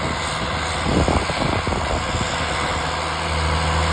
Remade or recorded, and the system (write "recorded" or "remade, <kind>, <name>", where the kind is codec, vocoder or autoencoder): recorded